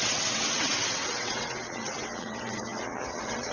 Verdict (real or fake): fake